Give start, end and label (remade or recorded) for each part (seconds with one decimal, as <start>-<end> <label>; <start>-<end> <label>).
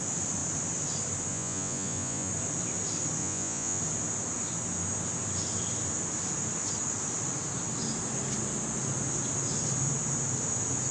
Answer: 0.0-1.3 recorded; 1.3-2.3 remade; 2.3-3.2 recorded; 3.2-3.8 remade; 3.8-10.9 recorded